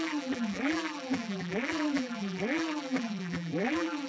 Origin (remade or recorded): remade